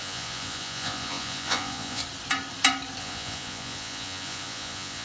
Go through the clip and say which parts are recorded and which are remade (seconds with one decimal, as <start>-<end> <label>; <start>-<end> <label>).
0.0-2.0 remade; 2.0-3.0 recorded; 3.0-5.0 remade